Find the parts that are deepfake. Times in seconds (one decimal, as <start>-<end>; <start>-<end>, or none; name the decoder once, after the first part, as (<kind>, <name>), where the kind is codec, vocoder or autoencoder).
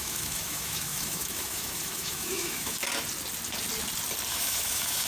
0.0-2.8 (autoencoder, DAC-VAE); 4.3-5.1